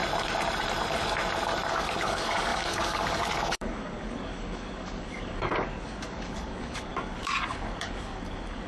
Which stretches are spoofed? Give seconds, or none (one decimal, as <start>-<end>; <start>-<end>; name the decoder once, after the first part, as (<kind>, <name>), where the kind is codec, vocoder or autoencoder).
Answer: 1.7-8.7 (codec, DAC)